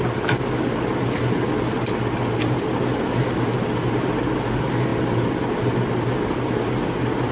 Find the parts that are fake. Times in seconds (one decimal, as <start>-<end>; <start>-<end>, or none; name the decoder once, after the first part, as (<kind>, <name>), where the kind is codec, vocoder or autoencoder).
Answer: none